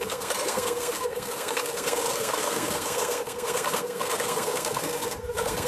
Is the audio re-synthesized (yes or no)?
yes